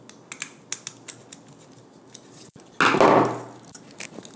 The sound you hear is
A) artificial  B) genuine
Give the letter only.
B